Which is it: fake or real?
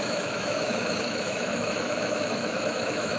fake